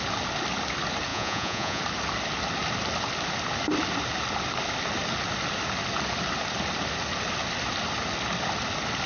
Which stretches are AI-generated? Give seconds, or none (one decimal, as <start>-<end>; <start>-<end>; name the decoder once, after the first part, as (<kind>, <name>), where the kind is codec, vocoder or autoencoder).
1.1-1.8 (vocoder, Vocos)